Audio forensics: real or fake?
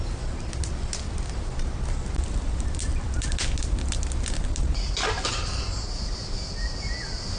real